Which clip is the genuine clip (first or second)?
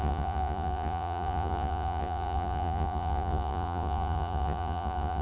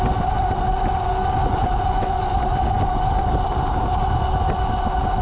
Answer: second